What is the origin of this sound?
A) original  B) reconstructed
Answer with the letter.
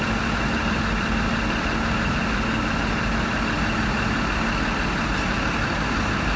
A